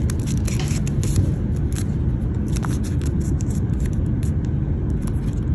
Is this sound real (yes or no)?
yes